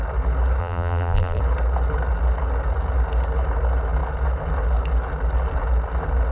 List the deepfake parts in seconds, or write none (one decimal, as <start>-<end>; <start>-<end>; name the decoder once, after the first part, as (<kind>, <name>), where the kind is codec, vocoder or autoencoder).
0.6-1.4 (vocoder, BigVGAN v2)